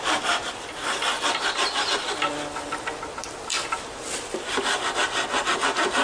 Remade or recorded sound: recorded